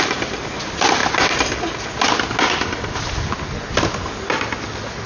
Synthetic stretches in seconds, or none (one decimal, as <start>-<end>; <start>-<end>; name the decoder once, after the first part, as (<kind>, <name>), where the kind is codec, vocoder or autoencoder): none